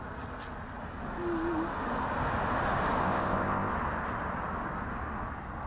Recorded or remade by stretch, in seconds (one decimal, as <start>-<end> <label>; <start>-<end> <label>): 0.0-3.0 recorded; 3.0-3.7 remade; 3.7-5.7 recorded